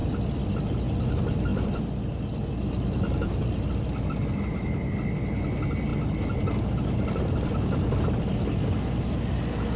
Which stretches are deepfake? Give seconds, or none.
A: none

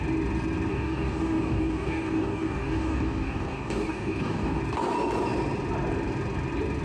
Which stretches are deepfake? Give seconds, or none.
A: 0.7-4.6 (codec, DAC)